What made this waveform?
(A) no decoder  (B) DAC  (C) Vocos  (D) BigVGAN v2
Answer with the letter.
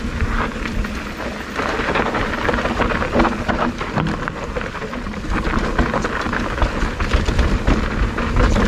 A